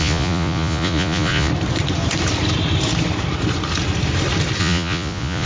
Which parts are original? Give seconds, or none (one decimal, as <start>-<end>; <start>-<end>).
1.5-4.6

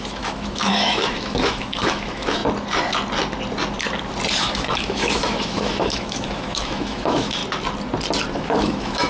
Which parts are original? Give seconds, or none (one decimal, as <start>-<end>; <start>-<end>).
2.4-4.4; 7.4-8.3

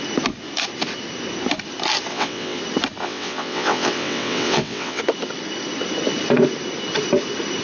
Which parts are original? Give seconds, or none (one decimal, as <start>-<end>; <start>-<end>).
0.0-2.1; 2.6-3.0; 5.0-7.6

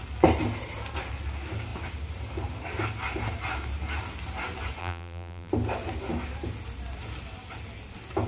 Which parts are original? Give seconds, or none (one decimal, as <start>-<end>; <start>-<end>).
0.0-4.8; 5.5-8.3

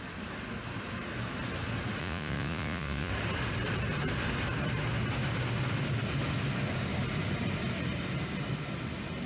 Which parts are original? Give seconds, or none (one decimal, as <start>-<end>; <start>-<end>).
0.0-2.0; 3.1-9.3

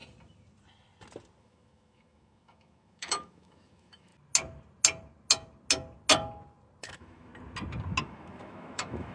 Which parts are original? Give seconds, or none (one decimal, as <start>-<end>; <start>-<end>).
0.0-1.4; 4.1-6.8; 7.3-8.0

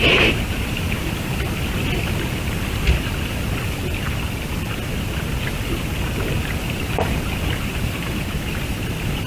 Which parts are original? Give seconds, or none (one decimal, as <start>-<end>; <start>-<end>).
0.0-7.7; 8.3-9.3